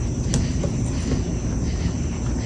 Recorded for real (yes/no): yes